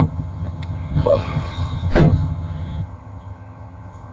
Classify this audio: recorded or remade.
remade